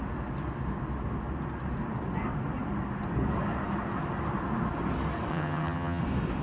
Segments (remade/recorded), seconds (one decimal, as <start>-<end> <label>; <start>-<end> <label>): 0.0-5.3 recorded; 5.3-6.0 remade; 6.0-6.4 recorded